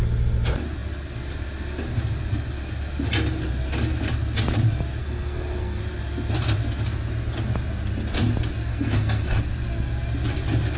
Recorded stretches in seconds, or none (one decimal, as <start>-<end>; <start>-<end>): 0.0-5.0; 5.8-8.7; 9.4-10.8